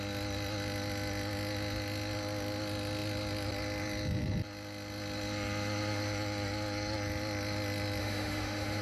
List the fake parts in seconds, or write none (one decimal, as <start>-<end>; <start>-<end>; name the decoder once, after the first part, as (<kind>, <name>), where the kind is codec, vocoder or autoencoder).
8.0-8.8 (autoencoder, DAC-VAE)